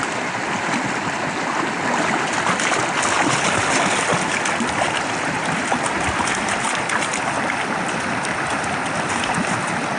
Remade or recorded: recorded